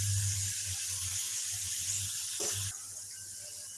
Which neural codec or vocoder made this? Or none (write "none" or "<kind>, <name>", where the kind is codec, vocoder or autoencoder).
none